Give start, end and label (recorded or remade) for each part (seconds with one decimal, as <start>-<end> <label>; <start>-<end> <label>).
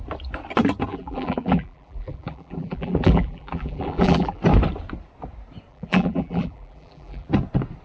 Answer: 0.0-0.9 recorded; 0.9-4.4 remade; 4.4-5.7 recorded; 5.7-7.3 remade; 7.3-7.8 recorded